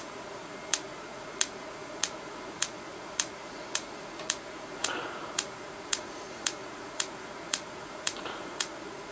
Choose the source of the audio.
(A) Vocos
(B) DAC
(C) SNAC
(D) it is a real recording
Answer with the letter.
A